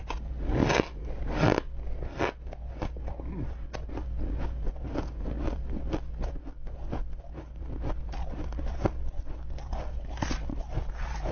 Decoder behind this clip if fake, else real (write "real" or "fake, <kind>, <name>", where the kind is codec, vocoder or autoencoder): real